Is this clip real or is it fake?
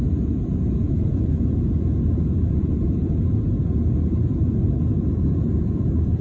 fake